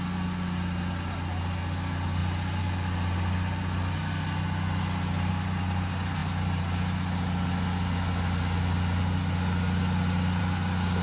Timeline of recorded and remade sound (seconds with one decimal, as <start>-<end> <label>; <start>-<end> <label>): 0.0-11.0 recorded